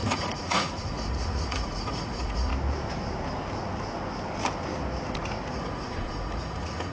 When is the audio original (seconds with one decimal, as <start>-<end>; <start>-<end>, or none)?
2.5-5.5